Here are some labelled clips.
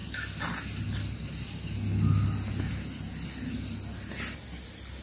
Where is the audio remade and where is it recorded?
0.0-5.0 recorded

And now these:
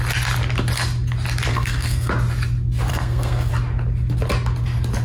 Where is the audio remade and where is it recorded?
0.0-1.5 recorded; 1.5-2.1 remade; 2.1-2.9 recorded; 2.9-3.5 remade; 3.5-5.0 recorded

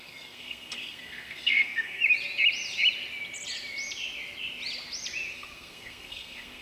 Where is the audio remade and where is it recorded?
0.0-2.0 remade; 2.0-5.3 recorded; 5.3-6.6 remade

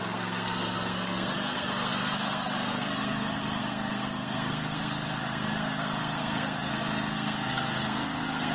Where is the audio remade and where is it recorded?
0.0-8.5 remade